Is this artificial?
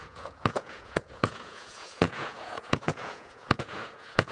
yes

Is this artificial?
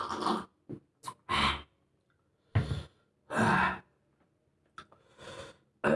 no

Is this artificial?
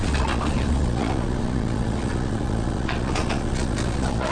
yes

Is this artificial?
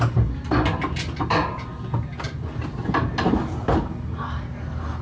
no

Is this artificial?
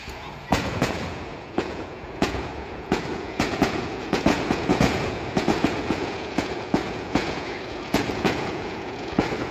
yes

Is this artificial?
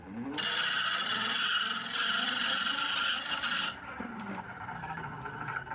no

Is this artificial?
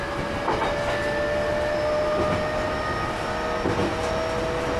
no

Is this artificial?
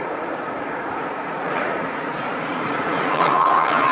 yes